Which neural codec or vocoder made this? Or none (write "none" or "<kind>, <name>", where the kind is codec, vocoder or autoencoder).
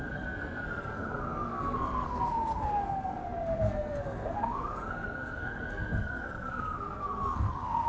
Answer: codec, SNAC